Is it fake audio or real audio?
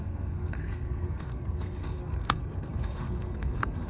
fake